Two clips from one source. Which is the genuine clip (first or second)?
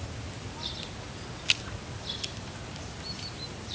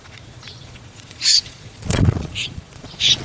first